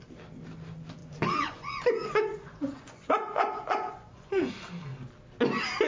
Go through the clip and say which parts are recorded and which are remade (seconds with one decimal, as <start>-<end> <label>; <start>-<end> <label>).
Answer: 0.0-1.0 recorded; 1.0-4.5 remade; 4.5-5.9 recorded

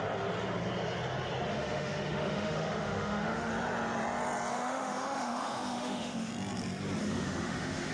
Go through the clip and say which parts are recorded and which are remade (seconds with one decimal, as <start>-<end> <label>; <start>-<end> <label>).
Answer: 0.0-1.5 recorded; 1.5-3.5 remade; 3.5-4.5 recorded; 4.5-6.3 remade; 6.3-7.0 recorded; 7.0-7.9 remade

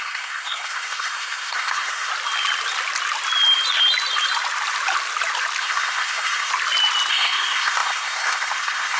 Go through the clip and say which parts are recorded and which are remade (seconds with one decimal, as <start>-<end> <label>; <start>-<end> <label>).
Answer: 0.0-2.1 remade; 2.1-5.6 recorded; 5.6-6.5 remade; 6.5-7.1 recorded; 7.1-9.0 remade